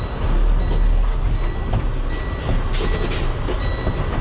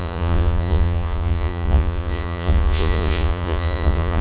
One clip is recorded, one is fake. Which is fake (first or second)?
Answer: second